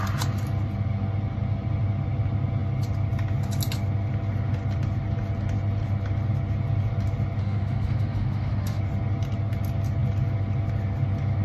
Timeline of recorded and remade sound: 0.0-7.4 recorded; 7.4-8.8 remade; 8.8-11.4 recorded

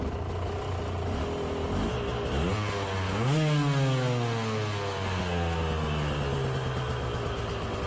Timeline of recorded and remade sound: 0.0-7.9 recorded

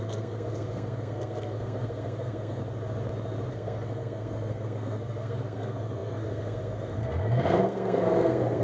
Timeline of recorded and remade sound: 0.0-2.6 remade; 2.6-3.5 recorded; 3.5-8.6 remade

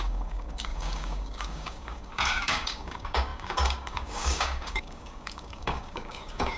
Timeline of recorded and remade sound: 0.0-6.6 remade

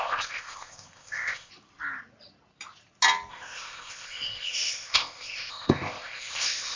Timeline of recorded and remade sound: 0.0-1.5 remade; 1.5-3.3 recorded; 3.3-6.8 remade

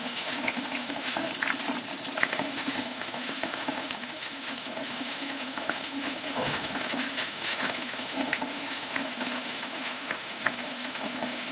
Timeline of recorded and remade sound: 0.0-1.3 remade; 1.3-2.2 recorded; 2.2-11.5 remade

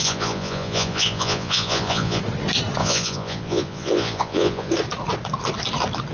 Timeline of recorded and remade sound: 0.0-2.2 remade; 2.2-2.8 recorded; 2.8-4.7 remade; 4.7-6.1 recorded